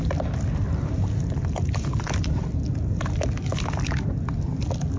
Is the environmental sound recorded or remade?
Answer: recorded